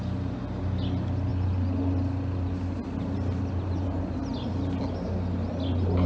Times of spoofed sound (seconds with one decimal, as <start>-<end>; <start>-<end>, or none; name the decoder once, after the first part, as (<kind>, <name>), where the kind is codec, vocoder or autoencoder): none

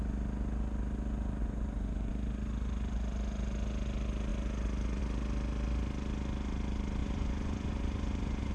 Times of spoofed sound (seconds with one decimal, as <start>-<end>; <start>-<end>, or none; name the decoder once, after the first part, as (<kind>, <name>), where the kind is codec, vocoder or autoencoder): 1.4-2.1 (vocoder, Vocos); 7.0-8.5

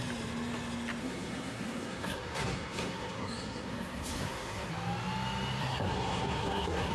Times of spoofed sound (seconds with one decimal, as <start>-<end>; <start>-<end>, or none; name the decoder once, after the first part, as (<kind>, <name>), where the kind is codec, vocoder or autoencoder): 1.0-4.7 (codec, SNAC); 5.6-6.9

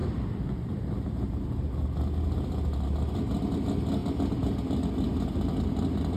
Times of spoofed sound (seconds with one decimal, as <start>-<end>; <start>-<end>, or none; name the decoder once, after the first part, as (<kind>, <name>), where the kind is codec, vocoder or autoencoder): 0.0-1.8 (vocoder, BigVGAN v2)